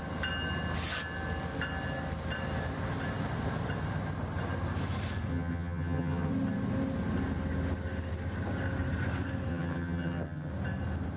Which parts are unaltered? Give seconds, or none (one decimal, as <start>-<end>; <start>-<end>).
0.0-5.3; 6.3-9.5; 10.5-11.2